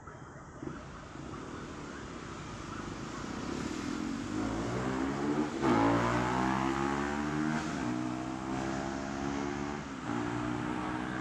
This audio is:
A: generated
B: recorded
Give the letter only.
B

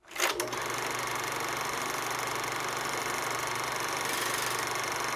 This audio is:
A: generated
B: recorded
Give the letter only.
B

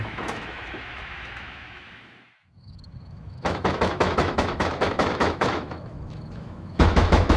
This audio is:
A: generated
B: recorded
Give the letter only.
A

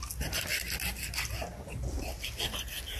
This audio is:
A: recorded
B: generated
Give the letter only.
A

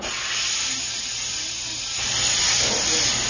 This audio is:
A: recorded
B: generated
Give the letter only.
A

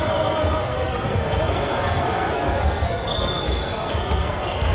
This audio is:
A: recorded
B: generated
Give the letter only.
B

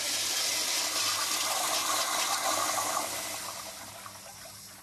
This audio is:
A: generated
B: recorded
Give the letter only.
B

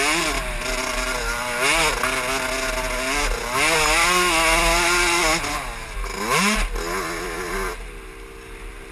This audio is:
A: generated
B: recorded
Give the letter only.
B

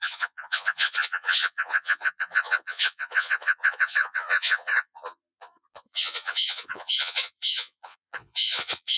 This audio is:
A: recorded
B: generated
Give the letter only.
B